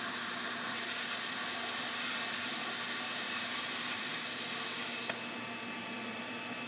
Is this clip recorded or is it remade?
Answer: recorded